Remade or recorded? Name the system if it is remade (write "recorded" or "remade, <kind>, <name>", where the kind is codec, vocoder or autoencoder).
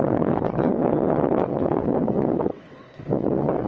remade, vocoder, WaveNeXt